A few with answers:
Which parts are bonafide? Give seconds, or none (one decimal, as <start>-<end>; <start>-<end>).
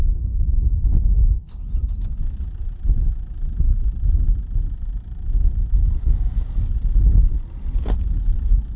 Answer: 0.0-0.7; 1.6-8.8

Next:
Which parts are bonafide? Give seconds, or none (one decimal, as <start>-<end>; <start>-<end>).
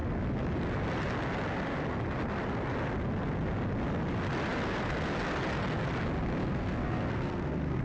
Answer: 0.0-6.4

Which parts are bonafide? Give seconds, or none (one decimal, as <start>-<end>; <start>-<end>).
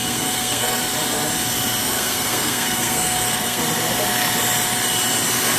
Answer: 0.8-1.8; 3.6-5.6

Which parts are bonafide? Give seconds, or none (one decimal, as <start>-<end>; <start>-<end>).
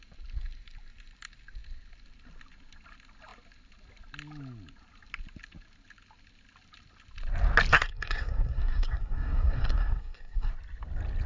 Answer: 0.0-7.7; 10.5-11.3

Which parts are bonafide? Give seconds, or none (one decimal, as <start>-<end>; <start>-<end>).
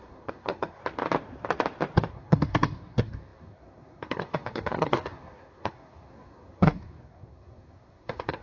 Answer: 0.8-2.1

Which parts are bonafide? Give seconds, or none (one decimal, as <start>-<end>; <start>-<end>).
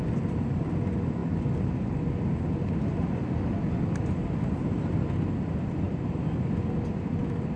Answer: 0.0-7.6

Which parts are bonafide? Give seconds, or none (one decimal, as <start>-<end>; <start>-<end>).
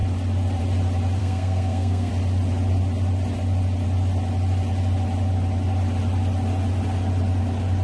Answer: 0.0-1.2; 2.1-7.8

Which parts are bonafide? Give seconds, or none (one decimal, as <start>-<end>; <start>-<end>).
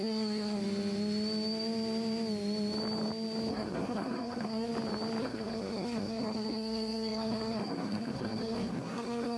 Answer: 0.6-3.5; 4.7-5.2